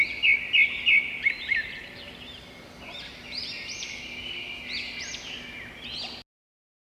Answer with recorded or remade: recorded